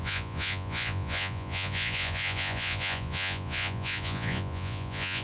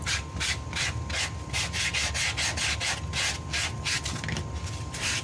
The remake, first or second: first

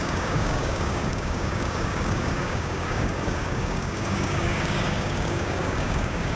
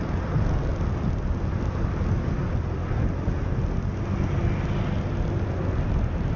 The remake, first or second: first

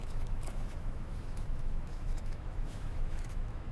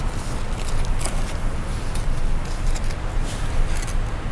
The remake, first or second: first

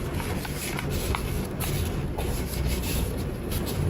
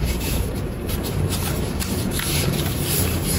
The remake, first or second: second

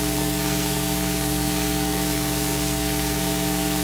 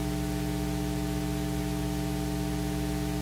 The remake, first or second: first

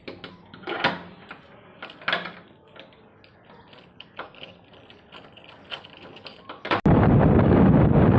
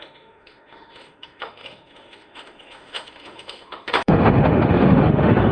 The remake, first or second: second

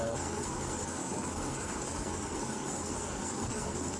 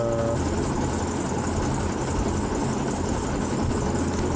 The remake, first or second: first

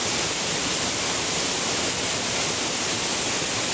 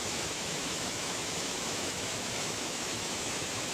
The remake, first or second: second